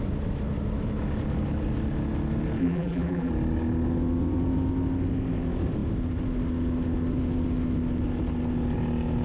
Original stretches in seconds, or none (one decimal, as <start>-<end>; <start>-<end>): 0.0-2.6; 3.3-9.2